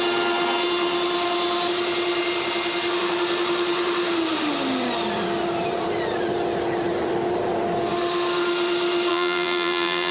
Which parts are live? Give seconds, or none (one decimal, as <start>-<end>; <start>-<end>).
0.0-9.1